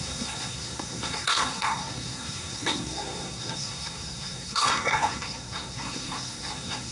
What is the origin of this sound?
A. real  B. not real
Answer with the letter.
B